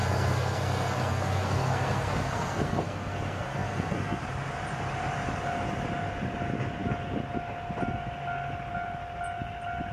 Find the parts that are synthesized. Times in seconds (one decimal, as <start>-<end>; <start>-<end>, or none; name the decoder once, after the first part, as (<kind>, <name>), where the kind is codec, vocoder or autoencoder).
0.0-4.2 (codec, SNAC)

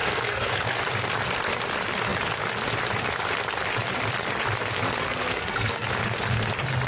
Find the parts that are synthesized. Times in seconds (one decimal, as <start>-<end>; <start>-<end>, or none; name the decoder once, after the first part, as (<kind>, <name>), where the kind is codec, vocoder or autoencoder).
0.0-0.8 (codec, SNAC); 5.0-5.9

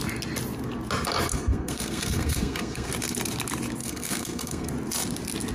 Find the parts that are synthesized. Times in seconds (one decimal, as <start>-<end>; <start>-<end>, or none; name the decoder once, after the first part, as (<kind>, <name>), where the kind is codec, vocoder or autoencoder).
1.3-2.9 (codec, SNAC); 3.8-4.7

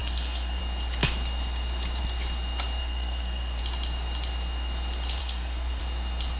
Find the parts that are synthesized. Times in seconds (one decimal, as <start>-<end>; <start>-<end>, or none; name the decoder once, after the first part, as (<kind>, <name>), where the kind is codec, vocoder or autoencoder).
0.0-0.6 (codec, SNAC); 2.8-3.6; 5.2-5.8

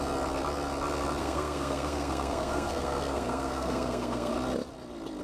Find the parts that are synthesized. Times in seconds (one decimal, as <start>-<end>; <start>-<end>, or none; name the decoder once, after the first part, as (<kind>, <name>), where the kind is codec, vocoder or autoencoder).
1.2-4.3 (codec, SNAC)

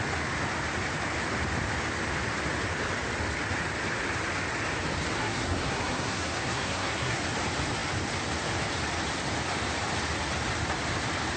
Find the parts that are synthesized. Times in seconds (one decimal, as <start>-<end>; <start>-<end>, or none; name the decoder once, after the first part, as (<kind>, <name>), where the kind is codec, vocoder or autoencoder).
5.2-7.2 (codec, SNAC)

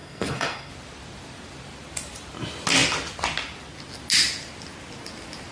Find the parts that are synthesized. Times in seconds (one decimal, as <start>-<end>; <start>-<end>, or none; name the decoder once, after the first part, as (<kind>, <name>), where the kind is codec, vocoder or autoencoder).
0.0-0.7 (codec, SNAC)

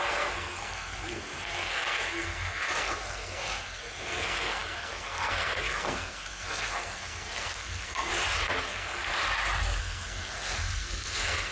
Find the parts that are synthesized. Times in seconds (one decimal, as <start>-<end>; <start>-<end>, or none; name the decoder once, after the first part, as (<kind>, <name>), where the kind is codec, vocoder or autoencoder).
0.0-8.1 (codec, SNAC); 8.6-9.0; 9.8-11.5